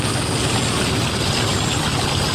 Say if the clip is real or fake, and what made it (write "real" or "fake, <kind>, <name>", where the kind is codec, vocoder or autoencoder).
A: real